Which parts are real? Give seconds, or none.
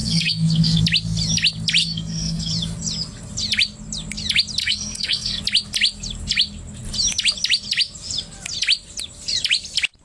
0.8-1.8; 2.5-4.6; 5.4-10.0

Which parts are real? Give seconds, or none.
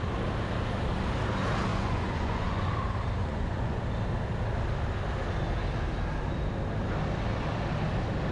0.0-1.7; 2.7-3.2; 3.8-8.3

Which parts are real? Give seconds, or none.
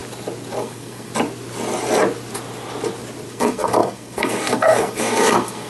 0.0-0.6; 1.1-3.3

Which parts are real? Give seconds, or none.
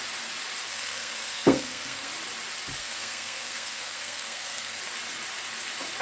0.0-0.7; 2.1-2.8; 4.8-6.0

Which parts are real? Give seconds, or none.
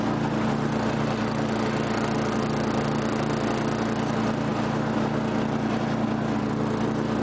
0.0-7.2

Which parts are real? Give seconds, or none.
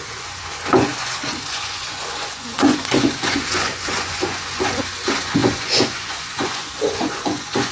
none